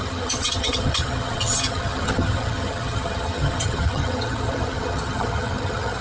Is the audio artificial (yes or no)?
yes